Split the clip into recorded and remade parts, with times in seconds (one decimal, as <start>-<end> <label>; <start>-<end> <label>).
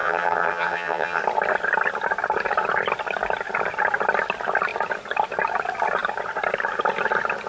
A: 0.0-1.2 remade; 1.2-7.5 recorded